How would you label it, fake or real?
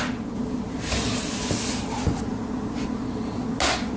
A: real